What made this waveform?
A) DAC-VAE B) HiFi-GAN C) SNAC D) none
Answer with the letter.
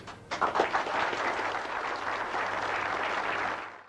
D